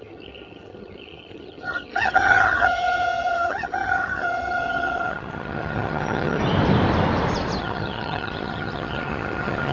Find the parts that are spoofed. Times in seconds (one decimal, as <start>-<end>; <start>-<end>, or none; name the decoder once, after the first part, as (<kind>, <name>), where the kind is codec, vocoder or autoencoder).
0.0-6.4 (vocoder, HiFi-GAN); 7.6-9.7